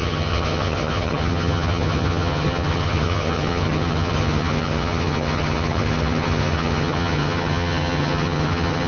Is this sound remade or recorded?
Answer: remade